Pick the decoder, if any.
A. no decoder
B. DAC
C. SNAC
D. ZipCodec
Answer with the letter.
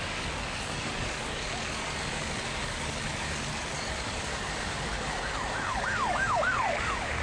B